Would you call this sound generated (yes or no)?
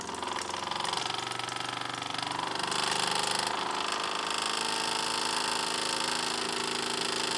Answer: no